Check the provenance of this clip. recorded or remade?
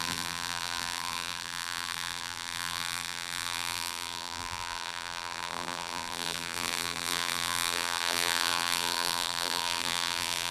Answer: remade